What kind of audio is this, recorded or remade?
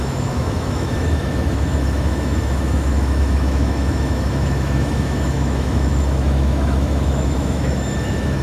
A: remade